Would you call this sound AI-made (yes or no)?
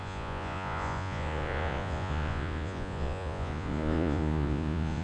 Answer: yes